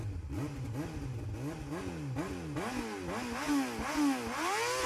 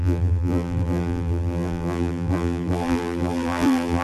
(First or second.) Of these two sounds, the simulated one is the second